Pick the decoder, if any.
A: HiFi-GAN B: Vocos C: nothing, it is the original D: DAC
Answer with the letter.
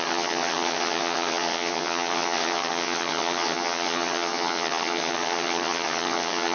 A